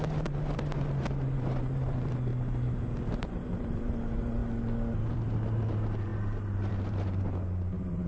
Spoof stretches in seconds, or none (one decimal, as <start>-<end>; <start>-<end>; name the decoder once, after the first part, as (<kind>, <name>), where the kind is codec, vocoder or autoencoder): 0.0-2.3 (vocoder, BigVGAN v2); 3.2-4.4; 5.1-8.1